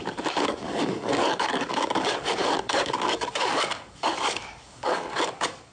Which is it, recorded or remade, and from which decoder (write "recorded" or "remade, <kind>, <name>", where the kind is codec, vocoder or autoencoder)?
remade, codec, DAC